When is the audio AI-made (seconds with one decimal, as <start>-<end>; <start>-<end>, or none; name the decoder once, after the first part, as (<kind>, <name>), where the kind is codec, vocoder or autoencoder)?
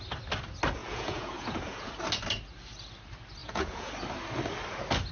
0.8-1.9 (vocoder, Vocos); 3.4-3.9